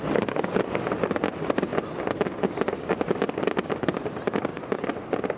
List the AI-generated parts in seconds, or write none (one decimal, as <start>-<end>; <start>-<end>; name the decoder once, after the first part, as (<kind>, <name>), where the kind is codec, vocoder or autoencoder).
none